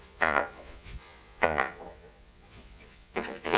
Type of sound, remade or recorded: remade